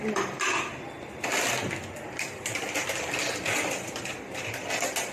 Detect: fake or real fake